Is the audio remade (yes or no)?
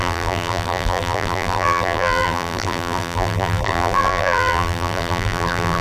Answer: yes